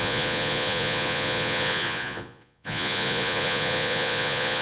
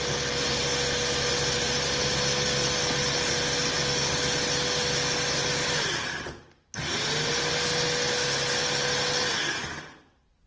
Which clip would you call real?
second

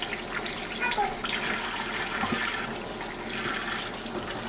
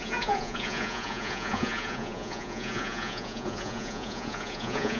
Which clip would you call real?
first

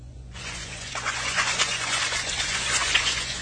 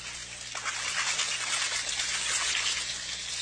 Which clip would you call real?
second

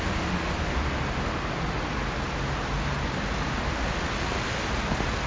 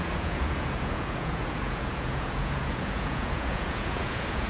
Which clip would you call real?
first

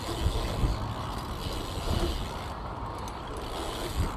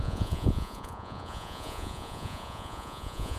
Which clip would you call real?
first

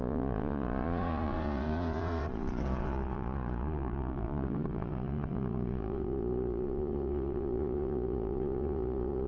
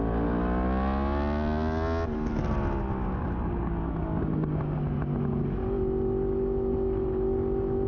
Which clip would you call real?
second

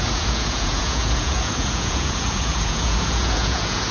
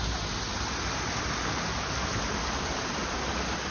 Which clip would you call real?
second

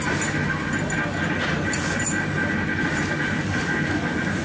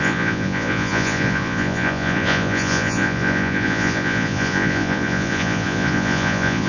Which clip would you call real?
first